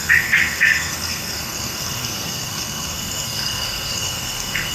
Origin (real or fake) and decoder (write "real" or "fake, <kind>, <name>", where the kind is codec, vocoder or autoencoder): fake, codec, SNAC